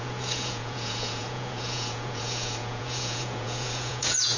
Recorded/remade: remade